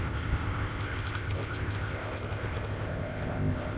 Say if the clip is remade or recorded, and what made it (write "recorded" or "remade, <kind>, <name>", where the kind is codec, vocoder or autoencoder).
remade, codec, ZipCodec